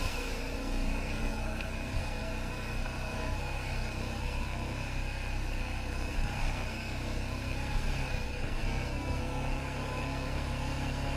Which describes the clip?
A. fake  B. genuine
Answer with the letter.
A